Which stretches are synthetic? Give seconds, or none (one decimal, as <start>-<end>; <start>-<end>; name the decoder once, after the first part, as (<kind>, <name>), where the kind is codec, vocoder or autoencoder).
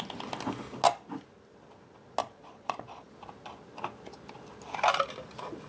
2.2-3.1 (vocoder, Vocos)